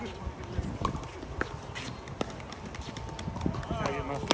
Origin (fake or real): real